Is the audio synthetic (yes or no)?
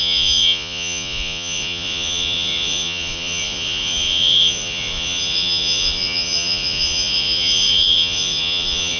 yes